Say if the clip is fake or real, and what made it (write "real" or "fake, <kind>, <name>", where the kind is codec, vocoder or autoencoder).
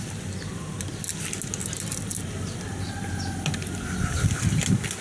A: real